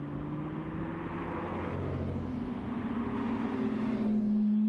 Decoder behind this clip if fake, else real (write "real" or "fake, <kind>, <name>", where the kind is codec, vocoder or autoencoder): real